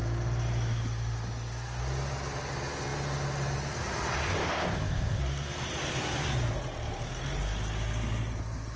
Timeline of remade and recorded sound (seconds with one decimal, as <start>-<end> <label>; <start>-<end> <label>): 0.0-4.4 recorded; 4.4-5.2 remade; 5.2-8.8 recorded